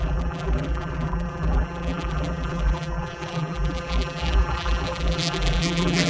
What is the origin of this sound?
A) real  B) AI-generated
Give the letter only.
B